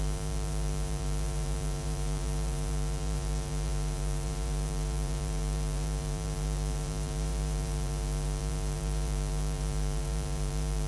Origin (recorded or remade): remade